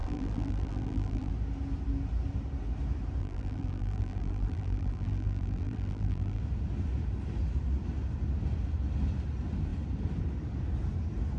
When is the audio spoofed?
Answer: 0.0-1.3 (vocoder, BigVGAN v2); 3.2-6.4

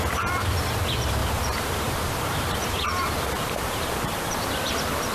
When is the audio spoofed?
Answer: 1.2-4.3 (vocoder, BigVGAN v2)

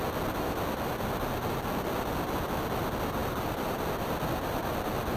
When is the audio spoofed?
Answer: none